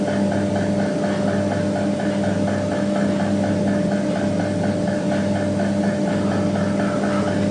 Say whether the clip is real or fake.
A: real